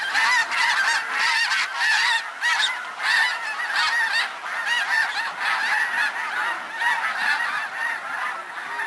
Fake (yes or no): no